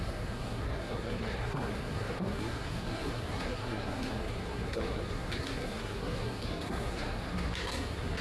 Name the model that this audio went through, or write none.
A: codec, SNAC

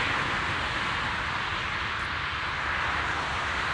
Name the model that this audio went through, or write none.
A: none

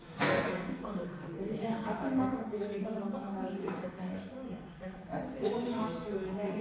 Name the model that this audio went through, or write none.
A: codec, SNAC